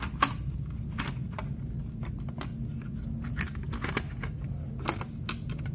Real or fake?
real